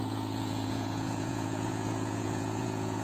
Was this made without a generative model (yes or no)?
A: no